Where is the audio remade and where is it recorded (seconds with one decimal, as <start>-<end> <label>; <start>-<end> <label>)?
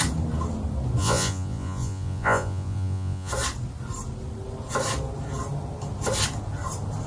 0.0-1.0 recorded; 1.0-3.3 remade; 3.3-7.1 recorded